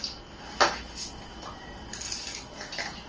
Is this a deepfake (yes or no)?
no